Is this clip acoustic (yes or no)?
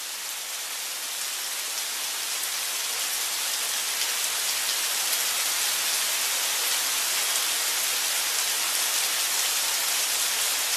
yes